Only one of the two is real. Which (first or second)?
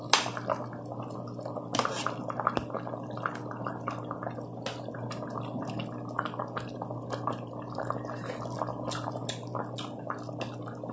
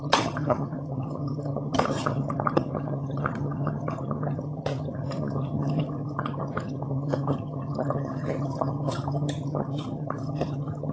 first